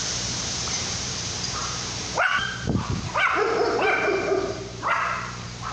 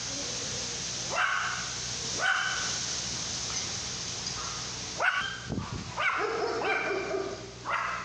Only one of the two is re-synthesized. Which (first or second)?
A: first